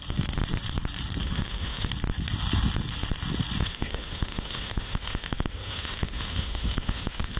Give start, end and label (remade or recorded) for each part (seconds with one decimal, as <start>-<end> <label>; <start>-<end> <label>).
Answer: 0.0-1.2 recorded; 1.2-1.9 remade; 1.9-3.6 recorded; 3.6-7.4 remade